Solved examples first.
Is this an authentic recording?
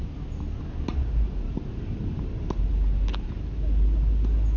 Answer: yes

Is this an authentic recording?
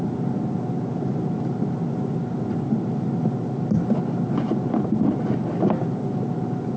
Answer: yes